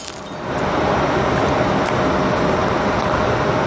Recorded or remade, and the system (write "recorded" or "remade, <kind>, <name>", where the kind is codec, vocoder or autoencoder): recorded